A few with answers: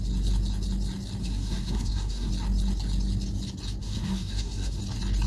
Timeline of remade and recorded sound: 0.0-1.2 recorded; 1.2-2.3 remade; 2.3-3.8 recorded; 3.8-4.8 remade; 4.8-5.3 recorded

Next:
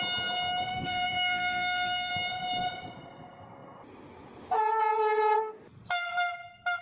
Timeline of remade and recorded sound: 0.0-0.7 recorded; 0.7-2.1 remade; 2.1-6.8 recorded

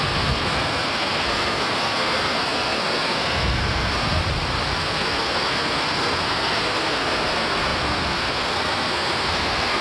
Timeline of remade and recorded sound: 0.0-4.2 remade; 4.2-4.8 recorded; 4.8-9.8 remade